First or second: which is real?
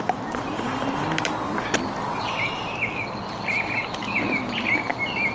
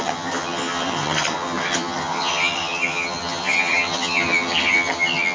first